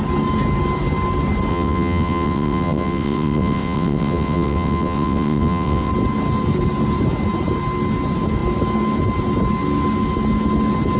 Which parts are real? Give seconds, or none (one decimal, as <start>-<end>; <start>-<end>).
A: 0.0-1.5; 5.9-11.0